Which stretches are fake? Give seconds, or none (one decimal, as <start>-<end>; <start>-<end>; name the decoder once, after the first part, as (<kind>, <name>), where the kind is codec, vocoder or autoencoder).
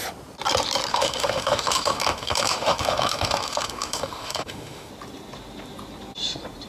0.9-4.9 (autoencoder, DAC-VAE)